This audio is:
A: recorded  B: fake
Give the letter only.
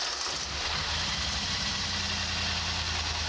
A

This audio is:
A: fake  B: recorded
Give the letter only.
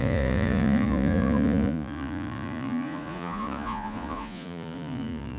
A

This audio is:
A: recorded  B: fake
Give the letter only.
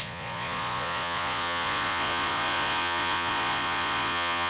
B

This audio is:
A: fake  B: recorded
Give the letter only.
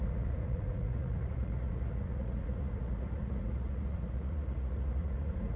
A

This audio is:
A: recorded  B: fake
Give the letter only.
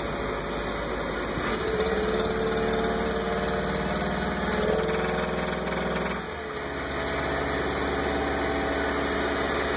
A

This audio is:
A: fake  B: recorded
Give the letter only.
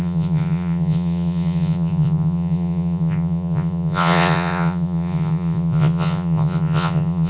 A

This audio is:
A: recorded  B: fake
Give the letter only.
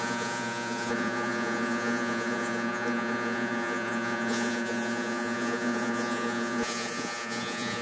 B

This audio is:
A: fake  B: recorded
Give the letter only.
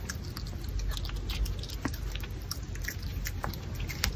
B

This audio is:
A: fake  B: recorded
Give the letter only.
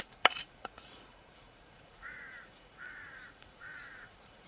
A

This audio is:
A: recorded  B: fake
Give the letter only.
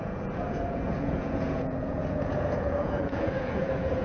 B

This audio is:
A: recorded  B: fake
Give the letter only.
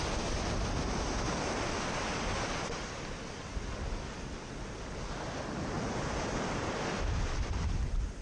A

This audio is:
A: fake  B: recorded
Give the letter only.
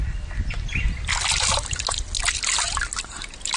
B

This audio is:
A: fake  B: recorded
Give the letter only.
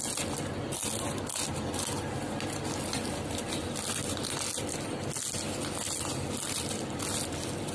B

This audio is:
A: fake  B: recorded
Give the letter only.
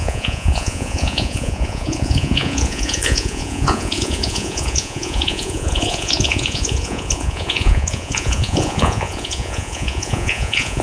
A